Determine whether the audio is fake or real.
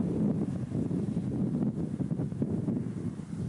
real